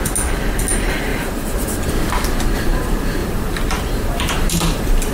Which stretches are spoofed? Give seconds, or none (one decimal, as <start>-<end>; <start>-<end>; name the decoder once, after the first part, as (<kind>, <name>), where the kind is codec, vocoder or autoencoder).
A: 1.1-2.1 (vocoder, BigVGAN v2); 3.2-5.1